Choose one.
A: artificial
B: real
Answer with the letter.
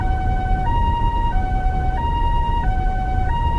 B